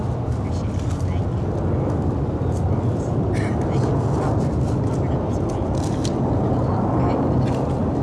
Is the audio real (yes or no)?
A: yes